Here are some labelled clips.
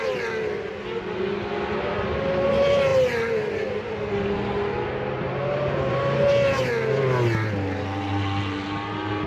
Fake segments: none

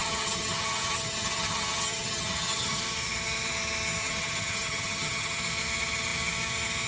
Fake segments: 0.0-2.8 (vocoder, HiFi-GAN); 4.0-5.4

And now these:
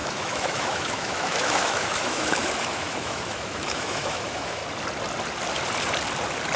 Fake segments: 0.0-4.6 (autoencoder, DAC-VAE)